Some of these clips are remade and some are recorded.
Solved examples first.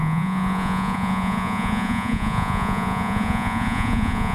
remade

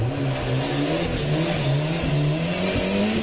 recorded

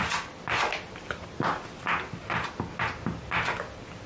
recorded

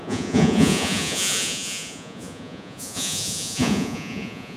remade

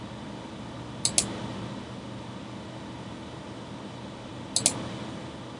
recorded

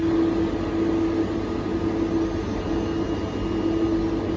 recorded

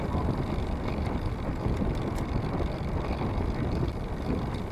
recorded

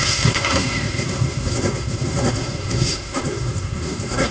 remade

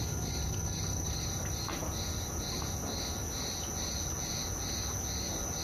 recorded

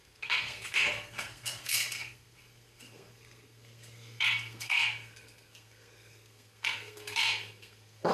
remade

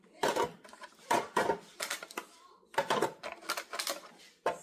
remade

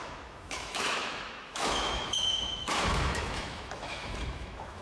remade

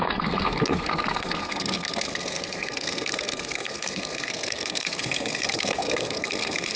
remade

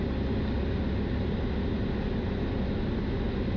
recorded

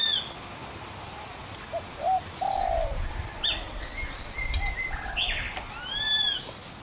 recorded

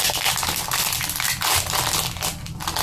recorded